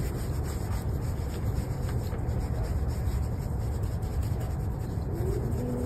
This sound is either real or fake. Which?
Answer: real